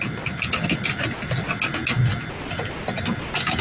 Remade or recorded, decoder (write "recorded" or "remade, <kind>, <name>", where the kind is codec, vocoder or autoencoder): recorded